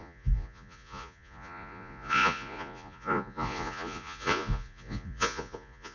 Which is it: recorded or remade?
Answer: remade